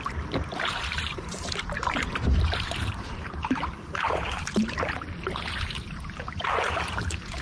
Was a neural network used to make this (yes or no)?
yes